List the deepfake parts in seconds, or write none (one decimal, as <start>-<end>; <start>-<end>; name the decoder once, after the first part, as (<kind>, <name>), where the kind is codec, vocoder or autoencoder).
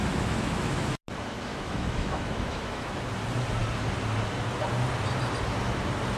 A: 0.0-1.0 (autoencoder, DAC-VAE); 1.5-2.9